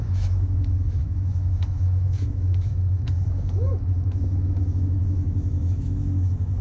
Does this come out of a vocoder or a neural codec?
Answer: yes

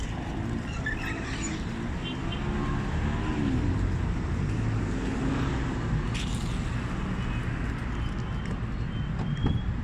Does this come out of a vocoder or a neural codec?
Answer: no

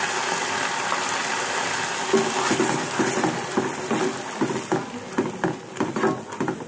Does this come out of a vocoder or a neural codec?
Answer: no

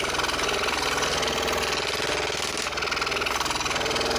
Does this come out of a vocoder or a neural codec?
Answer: no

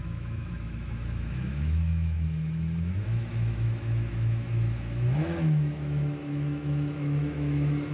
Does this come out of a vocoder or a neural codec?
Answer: yes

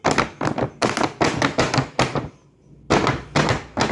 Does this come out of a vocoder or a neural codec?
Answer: no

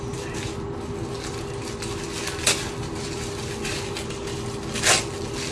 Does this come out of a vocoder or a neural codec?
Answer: no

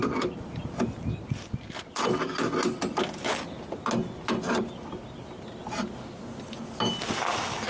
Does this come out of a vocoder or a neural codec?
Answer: no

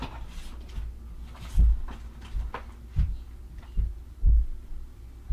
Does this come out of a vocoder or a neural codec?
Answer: no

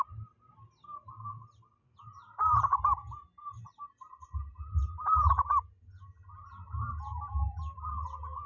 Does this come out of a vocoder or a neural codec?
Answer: no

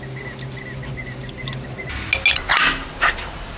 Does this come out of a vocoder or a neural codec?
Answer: no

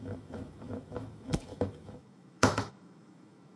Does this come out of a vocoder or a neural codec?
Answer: yes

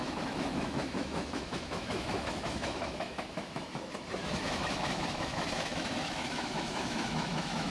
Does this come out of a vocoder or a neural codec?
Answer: yes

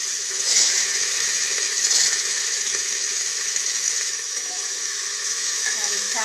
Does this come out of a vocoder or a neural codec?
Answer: yes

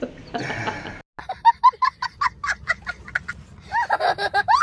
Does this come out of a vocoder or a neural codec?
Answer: no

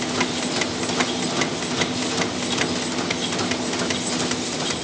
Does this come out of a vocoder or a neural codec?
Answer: no